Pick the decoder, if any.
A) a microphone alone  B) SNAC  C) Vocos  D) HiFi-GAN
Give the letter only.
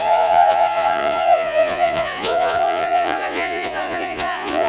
C